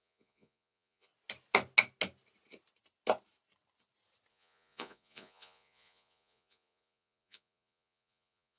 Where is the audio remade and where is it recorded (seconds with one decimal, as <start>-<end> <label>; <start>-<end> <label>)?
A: 0.0-1.1 remade; 1.1-4.3 recorded; 4.3-8.6 remade